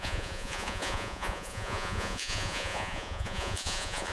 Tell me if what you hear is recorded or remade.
remade